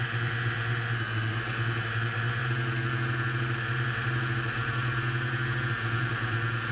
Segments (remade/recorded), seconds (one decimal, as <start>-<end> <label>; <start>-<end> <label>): 0.0-2.4 remade; 2.4-5.7 recorded; 5.7-6.7 remade